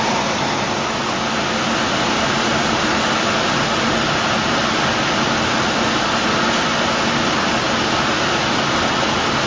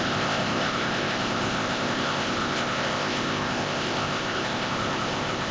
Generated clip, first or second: second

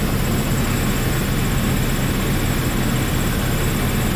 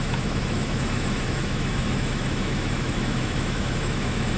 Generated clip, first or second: second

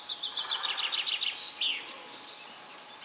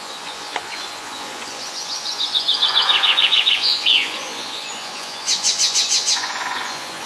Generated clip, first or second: second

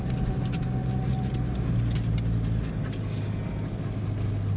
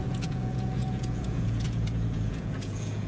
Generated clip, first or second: second